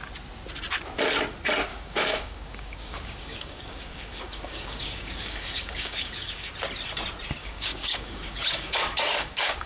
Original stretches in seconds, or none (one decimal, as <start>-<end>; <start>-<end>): 0.0-1.7; 6.5-7.4

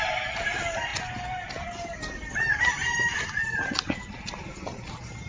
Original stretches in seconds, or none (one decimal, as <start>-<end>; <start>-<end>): 0.0-5.3